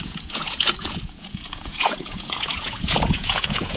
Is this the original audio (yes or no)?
no